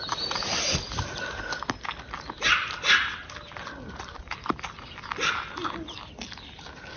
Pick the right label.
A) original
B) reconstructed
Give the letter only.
A